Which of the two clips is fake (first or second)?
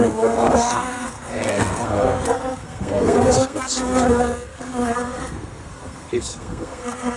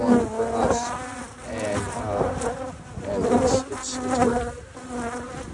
first